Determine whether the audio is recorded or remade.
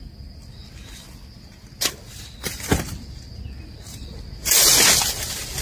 recorded